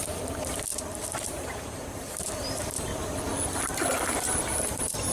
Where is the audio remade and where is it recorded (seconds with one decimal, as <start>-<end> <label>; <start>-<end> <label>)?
0.0-2.9 remade; 2.9-4.1 recorded; 4.1-5.1 remade